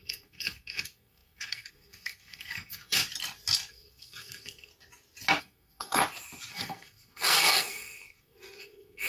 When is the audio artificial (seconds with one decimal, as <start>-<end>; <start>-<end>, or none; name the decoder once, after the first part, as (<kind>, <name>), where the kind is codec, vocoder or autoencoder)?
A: 0.0-3.0 (codec, SNAC); 3.7-4.7; 5.4-6.0; 6.5-9.1